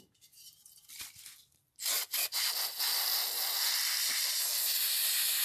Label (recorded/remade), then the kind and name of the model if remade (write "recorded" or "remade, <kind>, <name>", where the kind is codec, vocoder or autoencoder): recorded